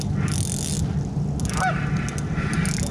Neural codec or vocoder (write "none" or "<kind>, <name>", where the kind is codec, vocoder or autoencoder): none